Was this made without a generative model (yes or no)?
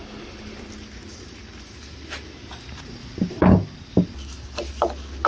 yes